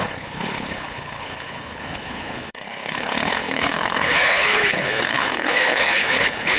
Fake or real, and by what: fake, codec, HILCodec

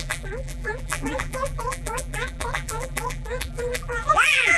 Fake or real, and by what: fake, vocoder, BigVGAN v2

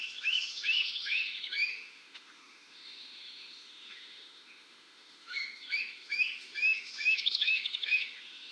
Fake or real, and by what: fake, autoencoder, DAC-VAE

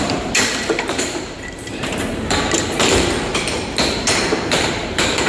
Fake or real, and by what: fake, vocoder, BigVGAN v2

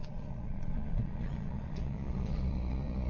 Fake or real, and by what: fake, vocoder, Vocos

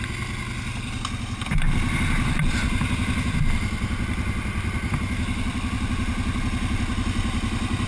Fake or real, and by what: real